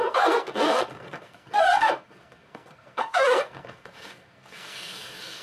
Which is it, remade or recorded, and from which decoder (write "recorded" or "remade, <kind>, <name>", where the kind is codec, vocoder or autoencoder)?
remade, codec, SNAC